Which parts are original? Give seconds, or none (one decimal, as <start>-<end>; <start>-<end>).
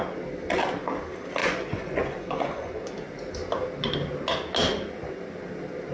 0.0-1.4; 2.9-5.9